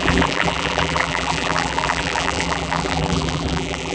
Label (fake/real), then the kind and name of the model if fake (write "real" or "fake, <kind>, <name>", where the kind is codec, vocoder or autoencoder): fake, vocoder, BigVGAN v2